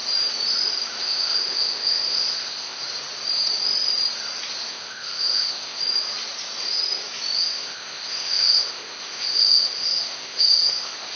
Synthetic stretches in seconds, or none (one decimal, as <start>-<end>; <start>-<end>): 1.0-2.8; 4.7-5.8; 7.4-11.2